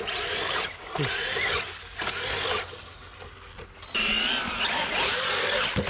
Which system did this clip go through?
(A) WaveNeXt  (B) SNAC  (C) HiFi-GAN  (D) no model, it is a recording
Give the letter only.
D